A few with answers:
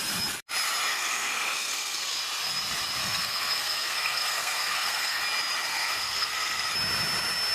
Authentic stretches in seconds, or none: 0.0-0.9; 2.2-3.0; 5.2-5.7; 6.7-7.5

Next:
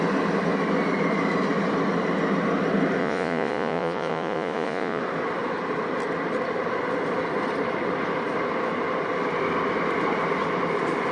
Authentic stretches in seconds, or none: 0.0-3.0; 5.0-11.1

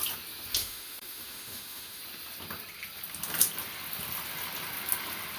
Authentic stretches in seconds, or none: 0.0-0.6; 2.0-5.4

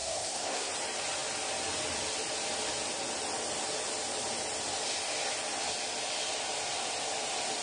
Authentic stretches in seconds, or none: 0.7-7.6

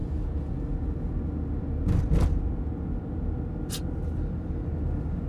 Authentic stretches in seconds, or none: 0.0-5.3